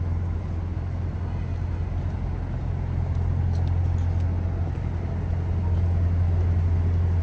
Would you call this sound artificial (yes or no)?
no